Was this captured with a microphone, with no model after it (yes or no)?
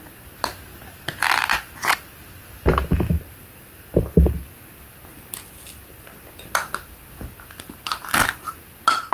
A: yes